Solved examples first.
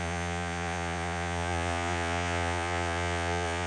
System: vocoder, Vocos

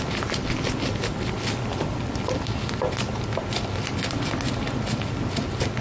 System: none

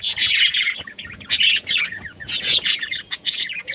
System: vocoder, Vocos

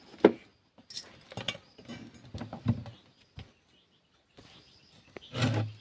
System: none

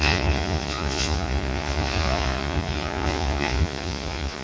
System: vocoder, Vocos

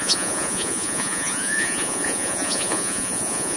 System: vocoder, Vocos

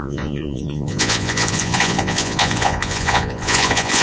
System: vocoder, Vocos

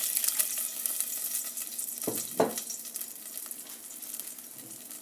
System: none